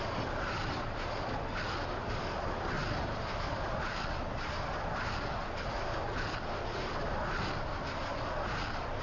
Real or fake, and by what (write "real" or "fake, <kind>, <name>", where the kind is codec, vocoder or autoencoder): real